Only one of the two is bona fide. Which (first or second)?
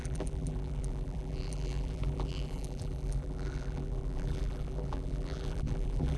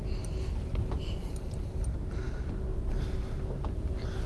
second